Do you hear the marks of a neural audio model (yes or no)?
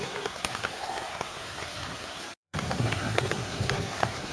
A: yes